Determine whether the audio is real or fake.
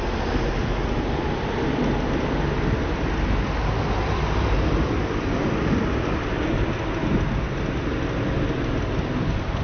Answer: real